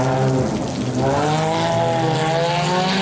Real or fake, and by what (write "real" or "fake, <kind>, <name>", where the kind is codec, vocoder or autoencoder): real